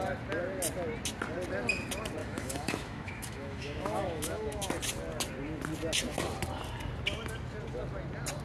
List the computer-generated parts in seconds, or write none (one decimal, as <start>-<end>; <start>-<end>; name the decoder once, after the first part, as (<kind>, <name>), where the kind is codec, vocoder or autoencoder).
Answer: 2.2-4.7 (autoencoder, DAC-VAE)